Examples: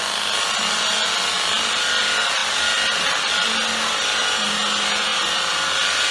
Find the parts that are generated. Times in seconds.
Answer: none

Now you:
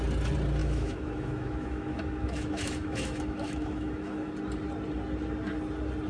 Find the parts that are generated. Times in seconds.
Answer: 0.6-4.3

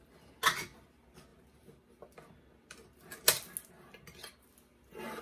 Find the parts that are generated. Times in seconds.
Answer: none

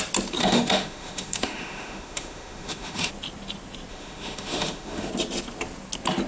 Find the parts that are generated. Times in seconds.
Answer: 0.4-3.1; 3.9-5.1

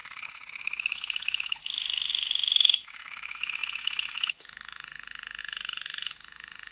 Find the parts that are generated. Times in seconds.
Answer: 0.0-6.7

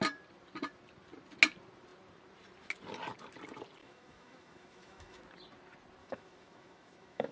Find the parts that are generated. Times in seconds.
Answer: 3.8-5.2; 6.0-7.3